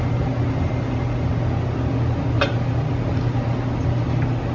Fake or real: real